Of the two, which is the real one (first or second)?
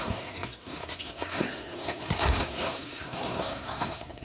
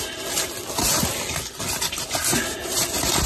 second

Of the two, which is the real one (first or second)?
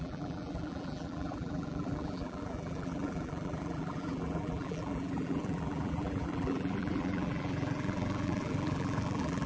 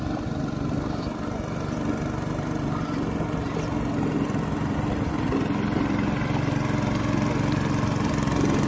second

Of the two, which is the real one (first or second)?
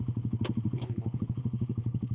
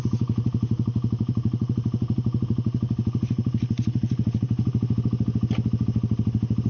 second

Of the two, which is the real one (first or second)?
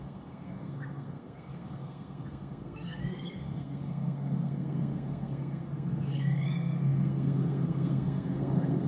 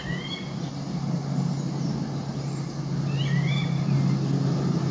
second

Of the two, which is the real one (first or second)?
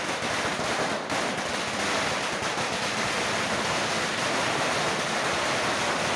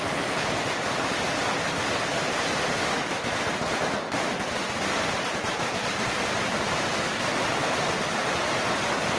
first